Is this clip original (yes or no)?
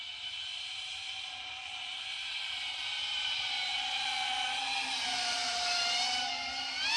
no